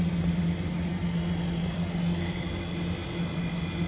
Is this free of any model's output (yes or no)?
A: yes